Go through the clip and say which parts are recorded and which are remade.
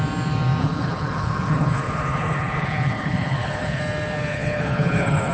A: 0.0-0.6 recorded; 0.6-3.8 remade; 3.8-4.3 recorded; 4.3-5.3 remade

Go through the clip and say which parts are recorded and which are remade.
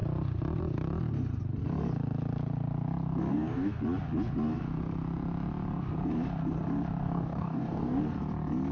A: 0.0-3.3 recorded; 3.3-3.8 remade; 3.8-7.0 recorded; 7.0-8.0 remade; 8.0-8.7 recorded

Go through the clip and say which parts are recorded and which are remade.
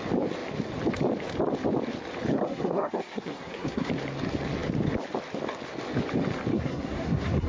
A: 0.0-2.3 recorded; 2.3-3.9 remade; 3.9-6.5 recorded; 6.5-7.5 remade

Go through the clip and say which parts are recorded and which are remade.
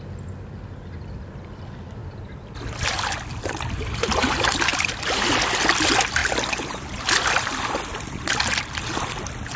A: 0.0-9.6 recorded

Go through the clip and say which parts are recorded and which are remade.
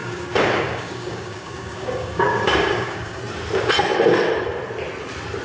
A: 0.0-3.2 remade; 3.2-5.4 recorded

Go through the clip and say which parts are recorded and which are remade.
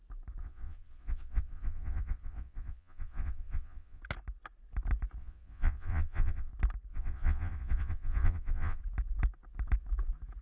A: 0.0-0.4 recorded; 0.4-4.0 remade; 4.0-5.2 recorded; 5.2-6.5 remade; 6.5-6.9 recorded; 6.9-8.8 remade; 8.8-10.4 recorded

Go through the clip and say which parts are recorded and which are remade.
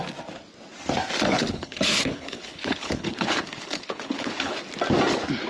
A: 0.0-1.3 recorded; 1.3-4.5 remade; 4.5-5.5 recorded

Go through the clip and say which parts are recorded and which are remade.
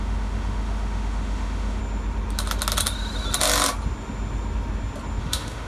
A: 0.0-1.8 remade; 1.8-5.2 recorded; 5.2-5.7 remade